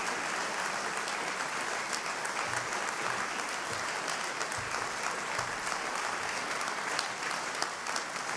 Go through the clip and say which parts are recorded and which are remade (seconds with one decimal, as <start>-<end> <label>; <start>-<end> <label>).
0.0-8.4 recorded